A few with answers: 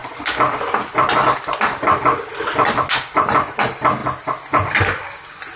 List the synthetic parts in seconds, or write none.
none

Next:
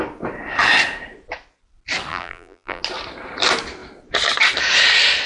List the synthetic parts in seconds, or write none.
2.1-2.8 (vocoder, BigVGAN v2)

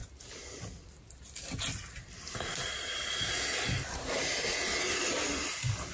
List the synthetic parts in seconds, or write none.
none

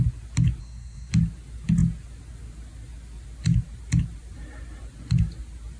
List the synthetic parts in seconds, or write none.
0.6-1.1 (codec, SNAC)

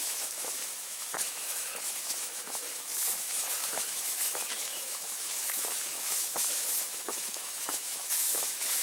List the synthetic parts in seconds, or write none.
0.0-8.8 (autoencoder, DAC-VAE)